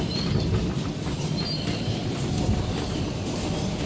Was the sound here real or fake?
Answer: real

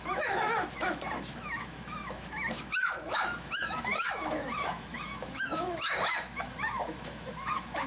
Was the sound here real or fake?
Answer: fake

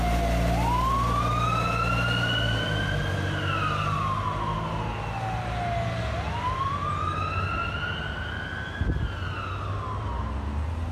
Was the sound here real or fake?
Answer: real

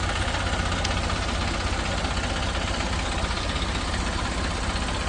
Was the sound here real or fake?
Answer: real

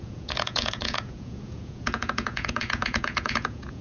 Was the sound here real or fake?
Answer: fake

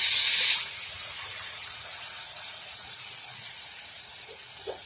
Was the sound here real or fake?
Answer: fake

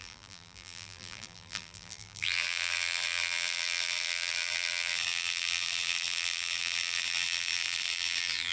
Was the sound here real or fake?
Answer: fake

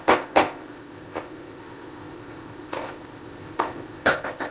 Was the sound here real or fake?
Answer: fake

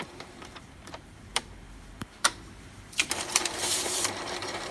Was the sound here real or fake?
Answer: fake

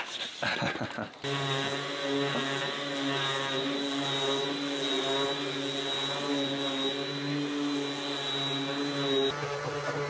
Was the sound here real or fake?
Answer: real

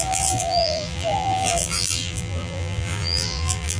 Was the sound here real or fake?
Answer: fake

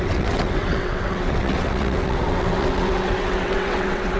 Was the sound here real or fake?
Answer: fake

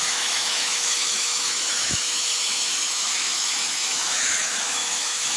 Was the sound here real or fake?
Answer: fake